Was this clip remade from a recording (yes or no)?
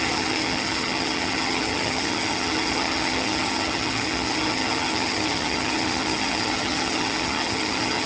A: yes